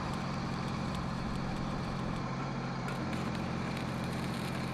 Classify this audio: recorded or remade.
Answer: remade